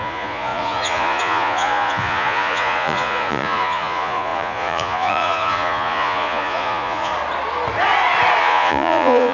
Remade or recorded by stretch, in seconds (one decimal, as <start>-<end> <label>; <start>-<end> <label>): 0.0-7.1 remade; 7.1-8.4 recorded; 8.4-9.3 remade